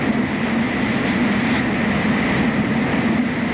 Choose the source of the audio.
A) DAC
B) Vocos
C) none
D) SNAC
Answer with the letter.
C